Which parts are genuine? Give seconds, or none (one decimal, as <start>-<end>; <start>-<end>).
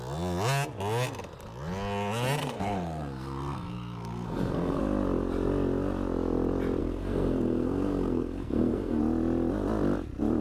0.0-2.4; 4.8-6.8; 9.0-10.4